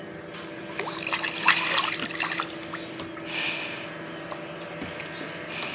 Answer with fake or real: real